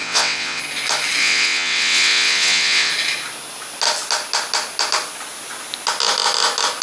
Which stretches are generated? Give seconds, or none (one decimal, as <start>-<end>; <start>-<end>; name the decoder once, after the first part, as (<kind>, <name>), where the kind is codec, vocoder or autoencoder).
0.0-0.6 (vocoder, WaveNeXt); 1.2-2.9